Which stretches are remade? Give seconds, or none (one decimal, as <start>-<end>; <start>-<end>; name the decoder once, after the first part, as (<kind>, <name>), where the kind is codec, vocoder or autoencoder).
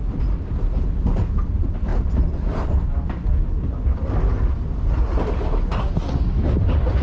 none